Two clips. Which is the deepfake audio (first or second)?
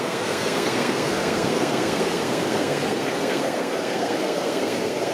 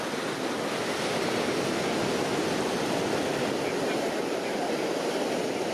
first